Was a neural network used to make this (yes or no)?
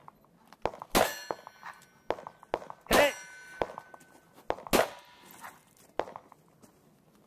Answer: no